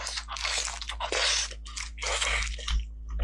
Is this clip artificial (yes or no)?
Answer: no